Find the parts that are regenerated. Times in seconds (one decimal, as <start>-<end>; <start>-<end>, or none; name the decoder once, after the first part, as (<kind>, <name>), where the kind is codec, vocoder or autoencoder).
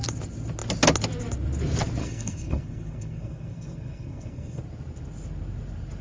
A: 2.0-4.6 (codec, SNAC)